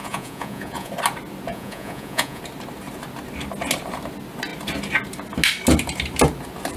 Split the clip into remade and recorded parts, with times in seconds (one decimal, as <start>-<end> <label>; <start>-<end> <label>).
0.0-0.9 remade; 0.9-1.5 recorded; 1.5-2.4 remade; 2.4-6.8 recorded